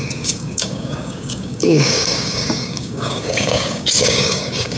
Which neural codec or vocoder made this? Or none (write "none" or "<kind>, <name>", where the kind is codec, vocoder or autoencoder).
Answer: codec, DAC